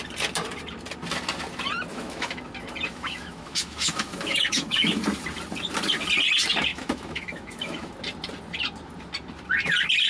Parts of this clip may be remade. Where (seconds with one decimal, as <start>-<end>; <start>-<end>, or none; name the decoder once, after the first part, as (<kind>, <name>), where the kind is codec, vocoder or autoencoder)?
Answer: 1.9-2.4 (autoencoder, DAC-VAE); 2.9-5.0; 6.7-7.9